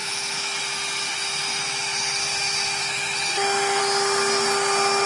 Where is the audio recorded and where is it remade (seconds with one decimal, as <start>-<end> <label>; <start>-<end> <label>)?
0.0-0.6 remade; 0.6-1.4 recorded; 1.4-3.8 remade; 3.8-5.1 recorded